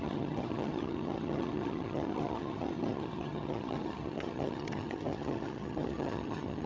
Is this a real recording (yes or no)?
no